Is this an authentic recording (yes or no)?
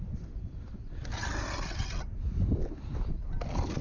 yes